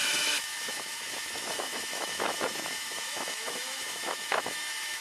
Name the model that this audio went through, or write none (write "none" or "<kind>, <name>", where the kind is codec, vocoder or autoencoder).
autoencoder, DAC-VAE